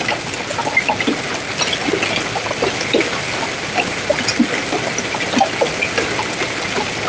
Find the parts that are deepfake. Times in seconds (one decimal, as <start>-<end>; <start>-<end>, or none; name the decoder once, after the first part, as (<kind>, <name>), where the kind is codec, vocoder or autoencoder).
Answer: none